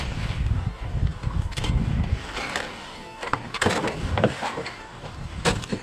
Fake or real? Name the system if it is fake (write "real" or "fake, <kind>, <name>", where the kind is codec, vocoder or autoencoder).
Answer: fake, codec, DAC